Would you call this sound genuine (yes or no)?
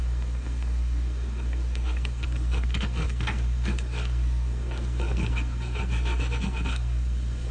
no